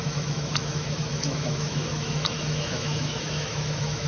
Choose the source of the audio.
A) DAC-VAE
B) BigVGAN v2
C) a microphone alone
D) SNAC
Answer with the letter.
A